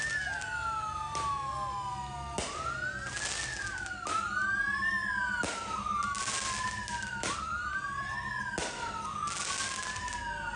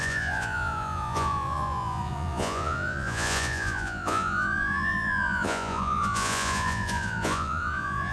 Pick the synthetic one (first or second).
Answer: second